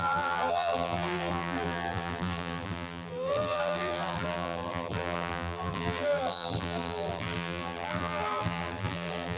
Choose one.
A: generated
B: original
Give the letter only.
A